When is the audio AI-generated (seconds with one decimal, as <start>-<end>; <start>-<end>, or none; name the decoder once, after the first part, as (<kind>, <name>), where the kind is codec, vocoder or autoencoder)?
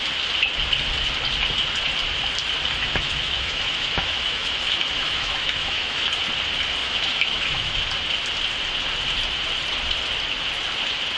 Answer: 2.8-6.1 (autoencoder, DAC-VAE); 6.8-7.8